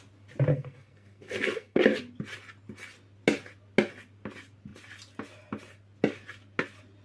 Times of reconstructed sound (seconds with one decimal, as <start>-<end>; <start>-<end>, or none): 0.5-1.8